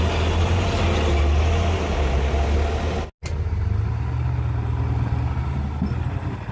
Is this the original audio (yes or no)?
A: yes